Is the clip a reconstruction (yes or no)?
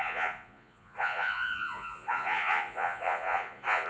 yes